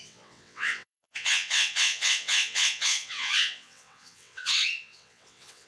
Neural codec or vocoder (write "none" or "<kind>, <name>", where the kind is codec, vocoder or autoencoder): vocoder, WaveNeXt